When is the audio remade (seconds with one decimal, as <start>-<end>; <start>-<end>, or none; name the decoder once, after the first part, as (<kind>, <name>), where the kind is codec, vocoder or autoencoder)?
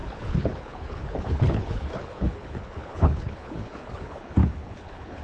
0.0-5.2 (codec, HILCodec)